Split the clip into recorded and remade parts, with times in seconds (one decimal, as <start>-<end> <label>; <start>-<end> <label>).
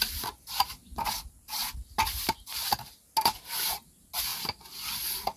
0.0-5.4 recorded